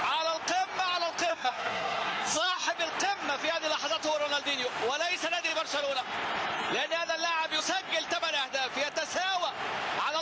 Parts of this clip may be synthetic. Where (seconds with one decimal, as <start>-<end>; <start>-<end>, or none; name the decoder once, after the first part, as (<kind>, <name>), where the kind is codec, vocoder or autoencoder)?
1.3-2.7 (codec, SNAC)